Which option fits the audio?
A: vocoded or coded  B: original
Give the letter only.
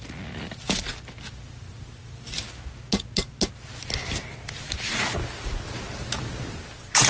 B